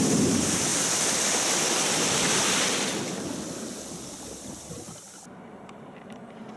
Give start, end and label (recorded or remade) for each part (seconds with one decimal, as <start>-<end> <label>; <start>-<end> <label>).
0.0-0.7 remade; 0.7-4.7 recorded; 4.7-6.6 remade